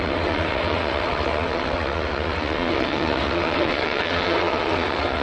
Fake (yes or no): yes